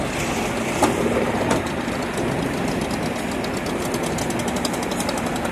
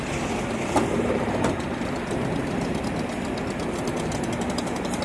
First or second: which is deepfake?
second